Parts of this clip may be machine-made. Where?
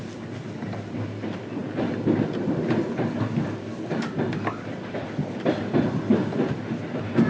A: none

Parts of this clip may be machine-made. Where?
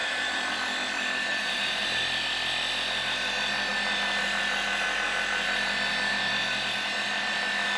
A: 0.0-0.5 (vocoder, BigVGAN v2); 1.3-2.0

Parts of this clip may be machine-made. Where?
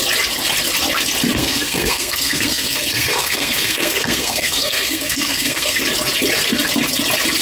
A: 1.4-5.8 (codec, SNAC)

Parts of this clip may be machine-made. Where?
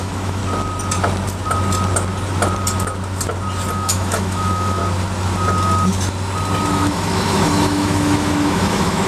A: 0.0-0.4 (autoencoder, DAC-VAE); 3.7-4.8; 6.7-9.1